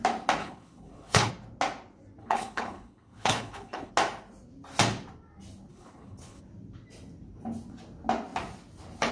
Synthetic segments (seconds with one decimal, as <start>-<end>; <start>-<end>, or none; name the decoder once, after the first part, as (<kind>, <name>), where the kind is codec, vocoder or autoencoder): 0.4-1.3 (codec, HILCodec); 2.2-3.9; 5.7-6.4